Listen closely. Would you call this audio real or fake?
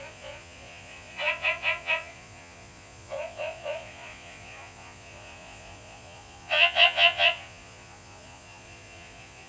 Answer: fake